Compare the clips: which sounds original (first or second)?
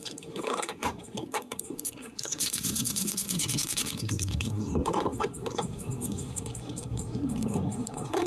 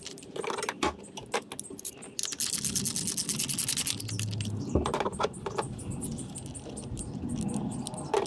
second